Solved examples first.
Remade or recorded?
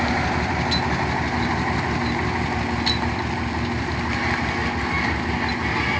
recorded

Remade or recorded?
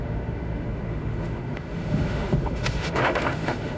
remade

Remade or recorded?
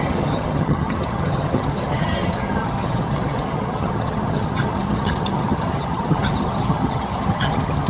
remade